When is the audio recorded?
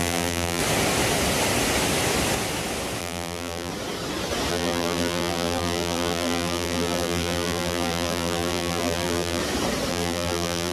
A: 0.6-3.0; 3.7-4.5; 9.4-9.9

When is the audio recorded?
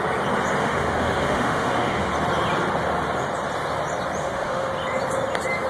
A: 0.0-0.6; 2.1-4.2; 4.7-5.7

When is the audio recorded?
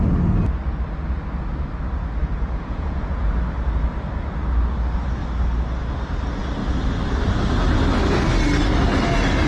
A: 0.0-2.2; 3.4-9.5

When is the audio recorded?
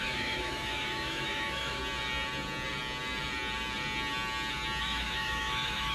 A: 1.8-4.8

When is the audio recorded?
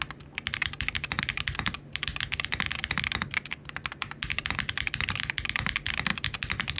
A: 0.0-6.8